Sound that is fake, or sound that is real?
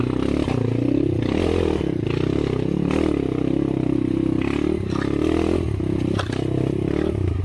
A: real